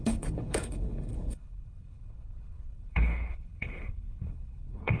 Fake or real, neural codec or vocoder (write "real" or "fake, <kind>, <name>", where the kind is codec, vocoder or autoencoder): fake, codec, HILCodec